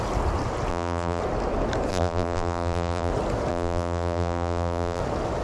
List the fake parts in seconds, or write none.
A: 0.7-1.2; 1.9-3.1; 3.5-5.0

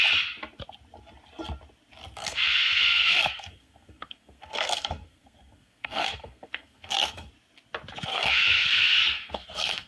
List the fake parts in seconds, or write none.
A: 2.2-7.3; 8.1-9.9

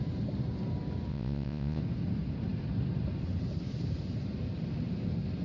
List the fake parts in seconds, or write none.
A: 1.1-1.8